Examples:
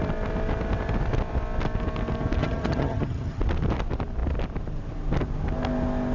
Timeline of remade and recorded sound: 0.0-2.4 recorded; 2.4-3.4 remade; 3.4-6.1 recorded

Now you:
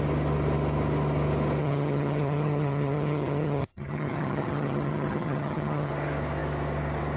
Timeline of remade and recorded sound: 0.0-1.6 recorded; 1.6-5.9 remade; 5.9-7.2 recorded

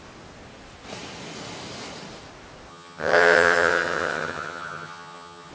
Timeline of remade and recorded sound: 0.0-2.7 recorded; 2.7-5.5 remade

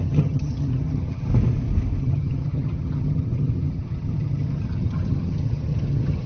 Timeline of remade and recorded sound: 0.0-1.3 remade; 1.3-2.0 recorded; 2.0-6.3 remade

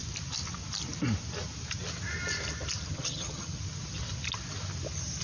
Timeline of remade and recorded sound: 0.0-2.9 recorded; 2.9-3.6 remade; 3.6-5.2 recorded